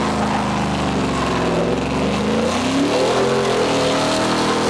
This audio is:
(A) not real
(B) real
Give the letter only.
B